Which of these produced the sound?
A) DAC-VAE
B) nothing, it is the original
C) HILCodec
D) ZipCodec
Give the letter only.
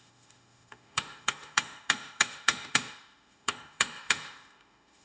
A